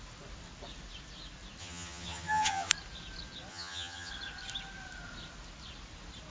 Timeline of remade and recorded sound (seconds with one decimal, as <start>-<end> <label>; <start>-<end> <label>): 0.0-1.6 recorded; 1.6-2.7 remade; 2.7-3.5 recorded; 3.5-4.1 remade; 4.1-6.3 recorded